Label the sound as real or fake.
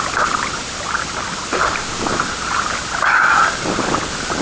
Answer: real